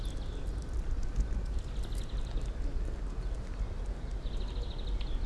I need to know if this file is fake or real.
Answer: real